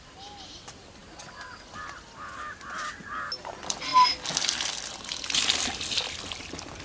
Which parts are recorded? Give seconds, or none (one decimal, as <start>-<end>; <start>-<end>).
1.0-3.4; 3.9-6.3